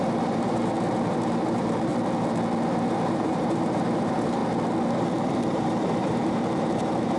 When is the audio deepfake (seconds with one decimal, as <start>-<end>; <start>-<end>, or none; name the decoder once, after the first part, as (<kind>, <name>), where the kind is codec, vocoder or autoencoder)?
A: 0.0-1.9 (vocoder, BigVGAN v2); 3.1-4.4; 5.0-7.2